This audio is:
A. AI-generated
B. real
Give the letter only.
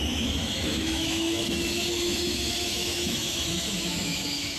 A